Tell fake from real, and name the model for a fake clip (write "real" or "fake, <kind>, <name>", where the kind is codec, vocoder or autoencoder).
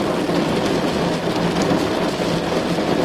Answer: real